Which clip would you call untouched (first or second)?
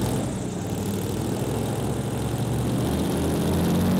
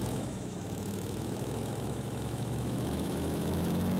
first